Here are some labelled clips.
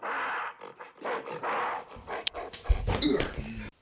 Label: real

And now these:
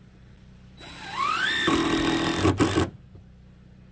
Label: real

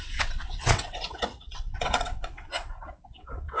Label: fake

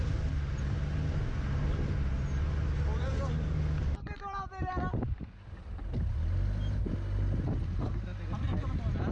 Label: real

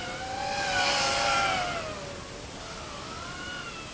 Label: real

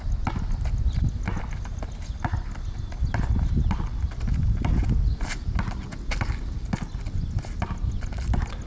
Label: real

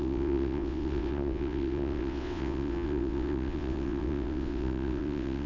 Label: fake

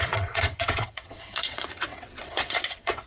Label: fake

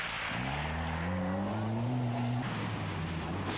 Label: real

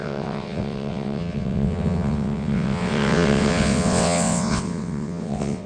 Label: fake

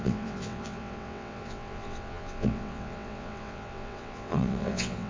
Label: fake